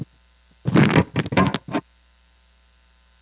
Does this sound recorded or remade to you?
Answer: recorded